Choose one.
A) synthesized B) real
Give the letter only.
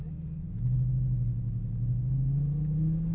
B